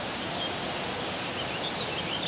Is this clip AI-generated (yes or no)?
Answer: no